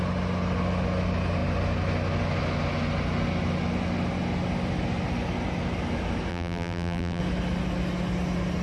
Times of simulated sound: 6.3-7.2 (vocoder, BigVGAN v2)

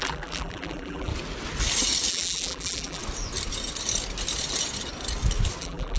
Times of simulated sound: 0.0-1.1 (vocoder, BigVGAN v2); 2.1-3.0; 5.6-6.0

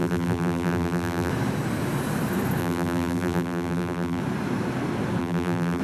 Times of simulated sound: 0.0-1.3 (vocoder, BigVGAN v2); 2.6-4.2; 5.2-5.8